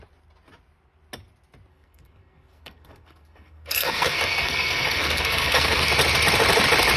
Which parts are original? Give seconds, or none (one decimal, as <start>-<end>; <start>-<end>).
0.0-1.7; 5.9-7.0